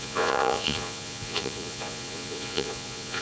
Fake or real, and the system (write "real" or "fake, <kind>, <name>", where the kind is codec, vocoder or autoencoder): fake, vocoder, Vocos